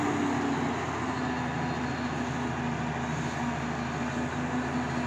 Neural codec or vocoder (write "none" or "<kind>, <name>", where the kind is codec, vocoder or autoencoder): none